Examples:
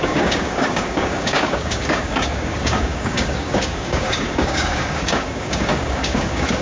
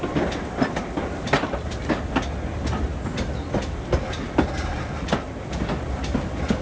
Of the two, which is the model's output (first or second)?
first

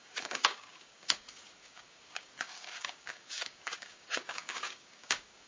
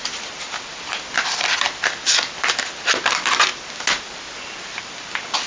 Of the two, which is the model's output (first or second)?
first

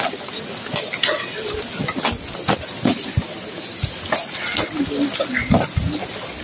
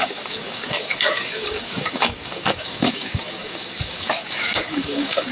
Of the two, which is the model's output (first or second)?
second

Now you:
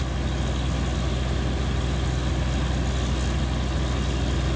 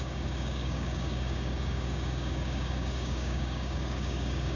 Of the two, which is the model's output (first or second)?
second